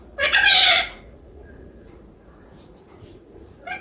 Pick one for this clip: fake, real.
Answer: fake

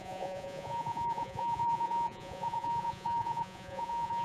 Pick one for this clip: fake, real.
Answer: fake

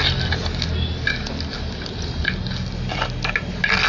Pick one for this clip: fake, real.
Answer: real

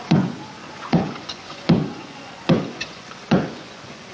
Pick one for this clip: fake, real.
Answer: fake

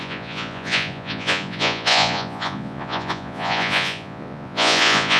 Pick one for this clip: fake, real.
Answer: fake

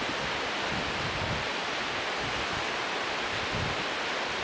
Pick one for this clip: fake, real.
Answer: real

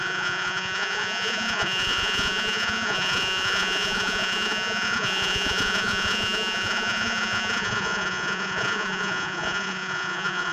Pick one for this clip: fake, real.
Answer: fake